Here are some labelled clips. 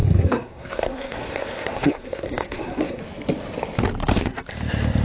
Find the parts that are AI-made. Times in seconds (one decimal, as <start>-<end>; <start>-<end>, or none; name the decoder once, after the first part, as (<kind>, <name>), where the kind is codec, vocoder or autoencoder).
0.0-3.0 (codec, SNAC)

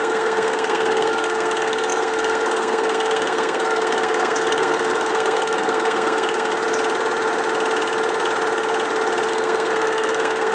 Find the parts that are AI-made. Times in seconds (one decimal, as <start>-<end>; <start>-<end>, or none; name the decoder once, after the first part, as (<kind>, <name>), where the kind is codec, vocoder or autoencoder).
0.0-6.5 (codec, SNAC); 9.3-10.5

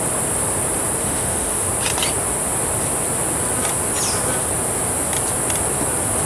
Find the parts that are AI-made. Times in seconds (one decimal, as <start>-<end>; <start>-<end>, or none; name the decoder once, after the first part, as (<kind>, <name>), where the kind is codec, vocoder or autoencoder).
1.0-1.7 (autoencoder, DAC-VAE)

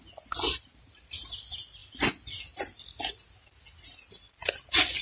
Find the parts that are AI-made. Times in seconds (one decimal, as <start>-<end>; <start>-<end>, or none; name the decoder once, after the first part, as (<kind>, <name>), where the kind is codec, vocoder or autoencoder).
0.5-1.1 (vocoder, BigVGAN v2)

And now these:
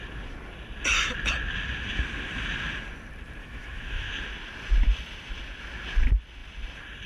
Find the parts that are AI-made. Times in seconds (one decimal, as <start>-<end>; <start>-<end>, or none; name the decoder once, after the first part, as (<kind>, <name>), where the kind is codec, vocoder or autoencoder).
3.4-4.1 (autoencoder, DAC-VAE)